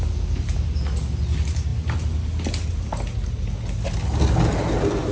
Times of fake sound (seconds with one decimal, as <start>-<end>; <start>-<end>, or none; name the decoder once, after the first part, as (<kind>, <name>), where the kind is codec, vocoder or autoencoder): none